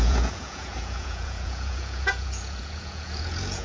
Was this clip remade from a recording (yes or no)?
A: yes